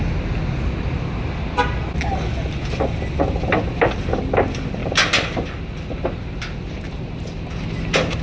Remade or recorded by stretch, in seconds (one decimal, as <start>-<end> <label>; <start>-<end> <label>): 0.0-8.2 recorded